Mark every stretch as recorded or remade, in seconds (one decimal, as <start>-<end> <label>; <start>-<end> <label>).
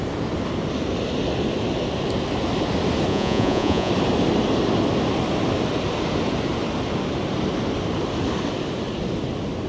0.0-3.1 recorded; 3.1-3.9 remade; 3.9-9.7 recorded